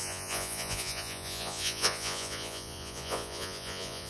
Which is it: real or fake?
fake